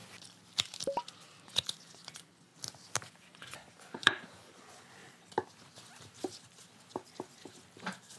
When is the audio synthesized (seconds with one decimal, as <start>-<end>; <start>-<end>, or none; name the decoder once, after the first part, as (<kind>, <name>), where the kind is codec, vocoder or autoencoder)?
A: 1.4-2.5 (vocoder, Vocos); 3.1-5.0